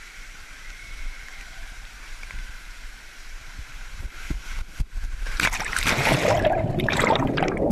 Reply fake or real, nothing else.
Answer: fake